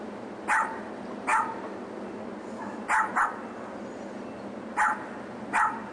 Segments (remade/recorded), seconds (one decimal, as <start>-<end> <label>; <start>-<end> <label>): 0.0-5.9 recorded